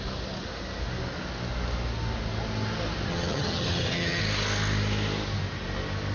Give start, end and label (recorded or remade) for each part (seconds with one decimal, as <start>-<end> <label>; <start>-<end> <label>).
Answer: 0.0-3.1 recorded; 3.1-4.2 remade; 4.2-6.1 recorded